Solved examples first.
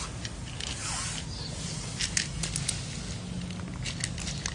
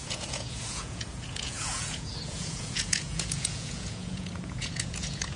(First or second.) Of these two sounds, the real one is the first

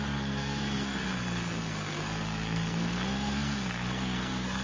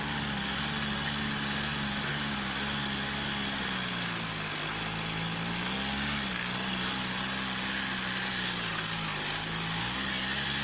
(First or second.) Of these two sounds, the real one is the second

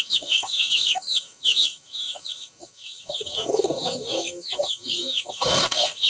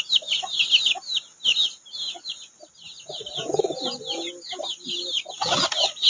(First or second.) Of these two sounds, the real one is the second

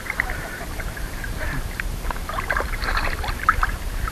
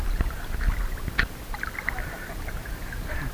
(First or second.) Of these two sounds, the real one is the second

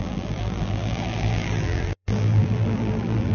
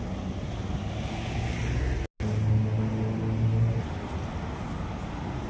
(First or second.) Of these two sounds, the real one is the second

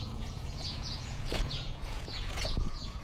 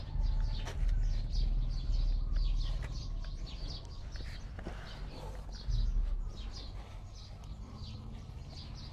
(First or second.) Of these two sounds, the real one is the second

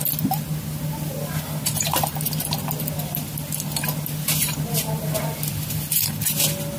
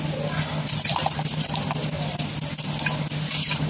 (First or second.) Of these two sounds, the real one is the first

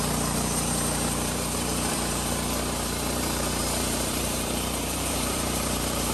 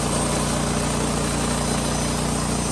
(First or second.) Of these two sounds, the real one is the second